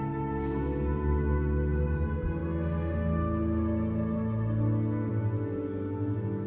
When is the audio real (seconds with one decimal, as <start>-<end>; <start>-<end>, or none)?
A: 0.0-6.5

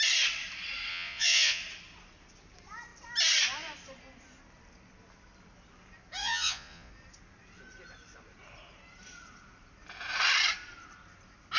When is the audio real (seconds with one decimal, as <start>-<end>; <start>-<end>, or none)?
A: 0.0-0.9; 1.6-6.2; 6.9-11.6

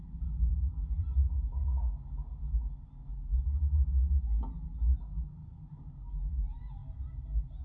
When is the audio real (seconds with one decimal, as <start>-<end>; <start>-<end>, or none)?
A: 0.5-1.0; 1.5-6.1; 6.8-7.6

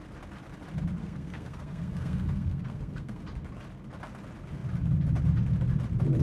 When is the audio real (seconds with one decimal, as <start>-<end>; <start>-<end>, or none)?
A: 0.0-1.0; 3.2-6.2